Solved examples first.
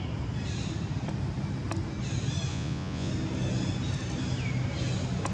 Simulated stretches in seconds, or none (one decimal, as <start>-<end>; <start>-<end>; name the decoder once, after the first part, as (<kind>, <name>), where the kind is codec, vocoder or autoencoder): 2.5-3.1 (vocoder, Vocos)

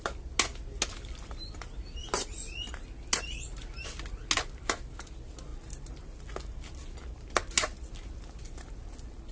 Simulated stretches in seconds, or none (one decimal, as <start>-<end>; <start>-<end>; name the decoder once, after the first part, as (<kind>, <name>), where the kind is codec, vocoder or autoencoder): none

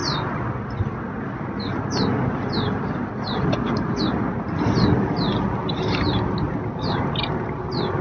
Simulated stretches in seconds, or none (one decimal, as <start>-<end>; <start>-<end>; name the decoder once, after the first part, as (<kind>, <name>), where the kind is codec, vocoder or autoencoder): none

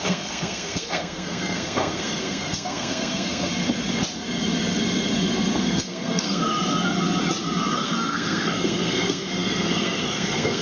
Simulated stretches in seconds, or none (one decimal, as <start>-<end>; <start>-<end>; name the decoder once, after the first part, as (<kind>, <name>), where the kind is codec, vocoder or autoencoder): 0.0-3.5 (codec, SNAC); 5.6-6.4; 7.7-10.6

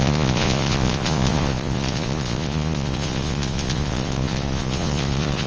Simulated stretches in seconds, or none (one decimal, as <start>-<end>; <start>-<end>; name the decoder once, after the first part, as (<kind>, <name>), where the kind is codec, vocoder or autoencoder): 0.0-5.5 (vocoder, Vocos)

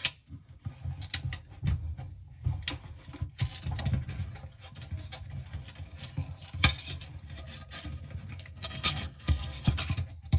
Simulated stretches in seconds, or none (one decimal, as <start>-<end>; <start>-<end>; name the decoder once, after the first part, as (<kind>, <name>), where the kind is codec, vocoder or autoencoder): 8.3-9.7 (codec, SNAC)

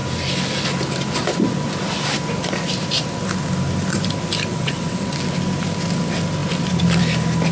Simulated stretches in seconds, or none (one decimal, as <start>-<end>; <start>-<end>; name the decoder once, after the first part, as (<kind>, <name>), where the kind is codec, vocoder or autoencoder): 4.5-5.1 (vocoder, WaveNeXt)